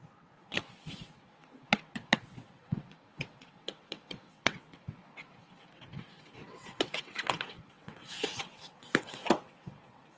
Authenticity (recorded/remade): remade